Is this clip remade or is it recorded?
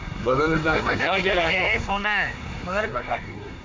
remade